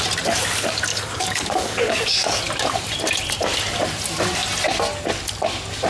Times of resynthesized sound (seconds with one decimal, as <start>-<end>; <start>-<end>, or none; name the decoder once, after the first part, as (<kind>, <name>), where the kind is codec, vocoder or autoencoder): 0.9-2.4 (codec, DAC)